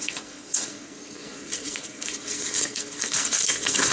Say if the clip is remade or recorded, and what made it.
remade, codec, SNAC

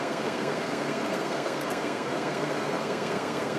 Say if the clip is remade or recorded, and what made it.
remade, codec, SNAC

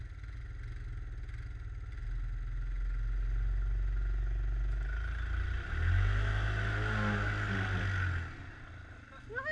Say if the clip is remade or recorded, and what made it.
recorded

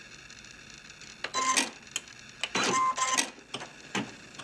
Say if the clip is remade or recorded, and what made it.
recorded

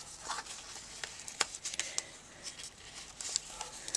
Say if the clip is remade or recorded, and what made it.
recorded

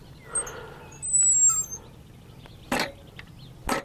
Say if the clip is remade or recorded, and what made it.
recorded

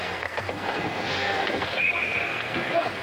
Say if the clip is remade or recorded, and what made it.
remade, codec, SNAC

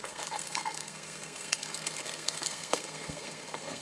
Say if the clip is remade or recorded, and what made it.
remade, codec, SNAC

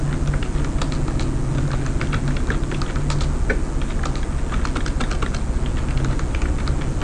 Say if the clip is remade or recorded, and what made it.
recorded